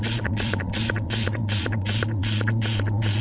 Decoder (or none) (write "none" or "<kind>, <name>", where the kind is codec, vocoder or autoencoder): vocoder, Vocos